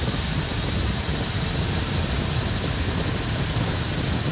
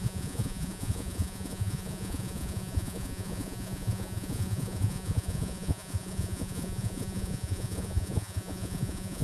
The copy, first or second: second